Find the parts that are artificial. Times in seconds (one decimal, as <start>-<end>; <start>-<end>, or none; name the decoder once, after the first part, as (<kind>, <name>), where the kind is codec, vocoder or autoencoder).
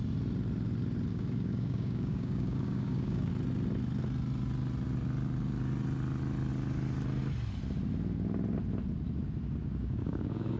1.1-3.3 (codec, DAC); 9.6-10.6